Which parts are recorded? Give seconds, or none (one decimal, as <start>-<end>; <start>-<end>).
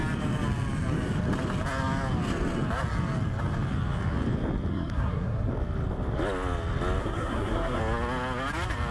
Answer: 0.0-4.7; 5.5-7.0; 7.8-8.9